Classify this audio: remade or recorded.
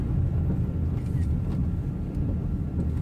recorded